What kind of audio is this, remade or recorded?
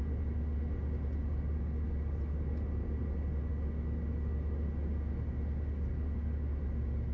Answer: recorded